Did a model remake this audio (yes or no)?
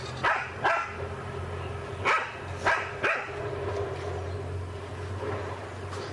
no